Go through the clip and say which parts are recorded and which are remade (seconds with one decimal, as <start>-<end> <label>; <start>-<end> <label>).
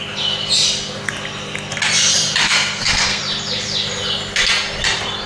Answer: 0.0-2.4 recorded; 2.4-3.2 remade; 3.2-5.3 recorded